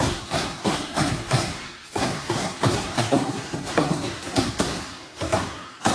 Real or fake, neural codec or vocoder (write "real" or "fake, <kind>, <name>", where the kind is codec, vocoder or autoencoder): fake, codec, SNAC